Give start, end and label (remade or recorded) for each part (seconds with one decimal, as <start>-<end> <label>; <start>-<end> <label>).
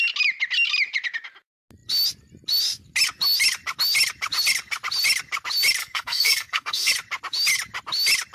0.0-5.8 recorded; 5.8-6.9 remade; 6.9-8.3 recorded